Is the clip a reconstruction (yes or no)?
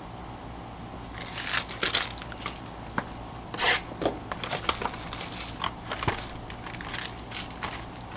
no